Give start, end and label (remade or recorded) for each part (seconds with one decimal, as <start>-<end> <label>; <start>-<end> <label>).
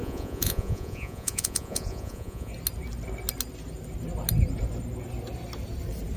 0.0-2.5 remade; 2.5-6.2 recorded